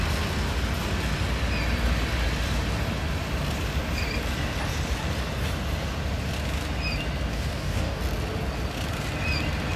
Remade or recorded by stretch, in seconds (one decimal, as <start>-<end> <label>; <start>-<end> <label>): 0.0-7.3 recorded; 7.3-8.0 remade; 8.0-9.8 recorded